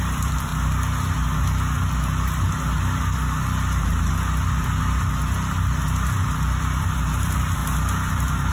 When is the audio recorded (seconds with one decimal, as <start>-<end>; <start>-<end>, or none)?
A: 0.5-5.1; 7.6-8.1